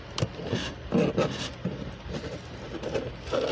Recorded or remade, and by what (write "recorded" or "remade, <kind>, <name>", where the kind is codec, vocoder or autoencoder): recorded